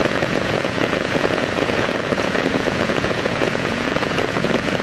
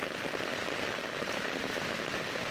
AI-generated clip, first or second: first